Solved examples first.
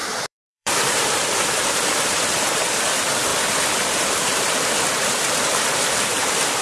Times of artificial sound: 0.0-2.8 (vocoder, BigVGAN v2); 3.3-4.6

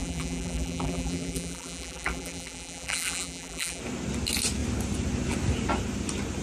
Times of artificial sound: 0.0-3.8 (vocoder, BigVGAN v2)